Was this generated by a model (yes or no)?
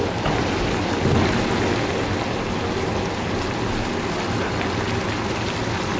no